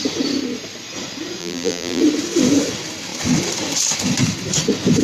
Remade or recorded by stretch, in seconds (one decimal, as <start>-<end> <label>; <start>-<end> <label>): 0.0-1.4 recorded; 1.4-2.0 remade; 2.0-5.0 recorded